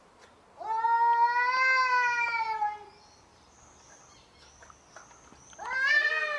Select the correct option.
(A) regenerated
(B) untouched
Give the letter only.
B